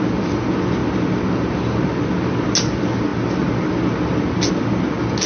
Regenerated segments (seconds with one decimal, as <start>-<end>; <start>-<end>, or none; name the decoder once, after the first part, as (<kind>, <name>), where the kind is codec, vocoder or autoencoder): none